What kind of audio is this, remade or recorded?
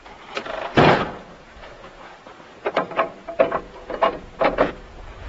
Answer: remade